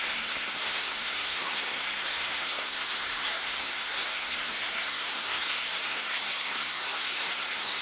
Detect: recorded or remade remade